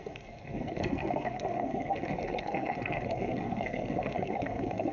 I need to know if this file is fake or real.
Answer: fake